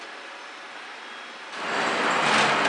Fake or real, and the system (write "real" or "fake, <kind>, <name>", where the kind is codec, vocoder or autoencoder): real